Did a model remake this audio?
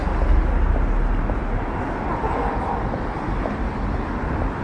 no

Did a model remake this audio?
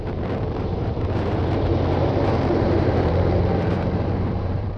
yes